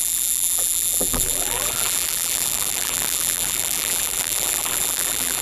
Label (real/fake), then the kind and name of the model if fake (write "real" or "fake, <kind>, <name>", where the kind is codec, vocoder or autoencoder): fake, vocoder, BigVGAN v2